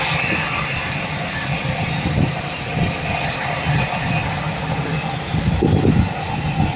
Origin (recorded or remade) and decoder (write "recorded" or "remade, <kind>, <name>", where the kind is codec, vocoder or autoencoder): recorded